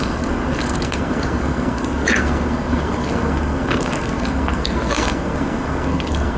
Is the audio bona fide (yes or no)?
no